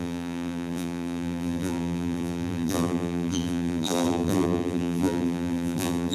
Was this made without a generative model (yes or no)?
no